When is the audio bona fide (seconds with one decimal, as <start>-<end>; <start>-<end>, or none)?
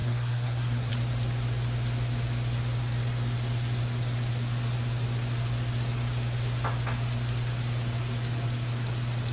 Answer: 0.9-9.3